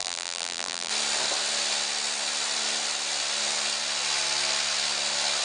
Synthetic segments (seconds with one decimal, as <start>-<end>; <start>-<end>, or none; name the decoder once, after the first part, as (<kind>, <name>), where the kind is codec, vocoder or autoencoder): 0.0-0.9 (vocoder, BigVGAN v2)